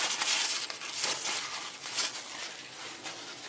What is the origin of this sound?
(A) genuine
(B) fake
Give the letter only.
A